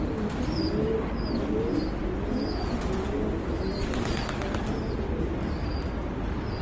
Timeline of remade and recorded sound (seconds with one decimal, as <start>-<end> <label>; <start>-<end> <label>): 0.0-6.6 recorded